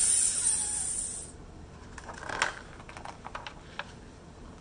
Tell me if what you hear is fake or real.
real